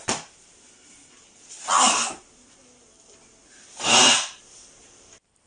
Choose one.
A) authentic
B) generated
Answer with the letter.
A